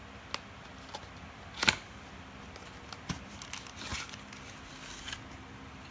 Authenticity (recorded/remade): recorded